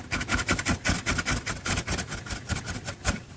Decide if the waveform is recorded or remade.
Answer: recorded